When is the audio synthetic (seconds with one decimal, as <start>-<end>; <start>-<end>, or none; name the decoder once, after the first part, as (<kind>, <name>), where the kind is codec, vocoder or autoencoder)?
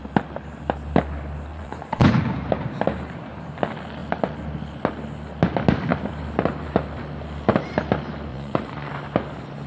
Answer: 1.5-2.2 (vocoder, Vocos); 8.3-8.9